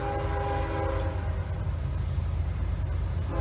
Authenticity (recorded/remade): recorded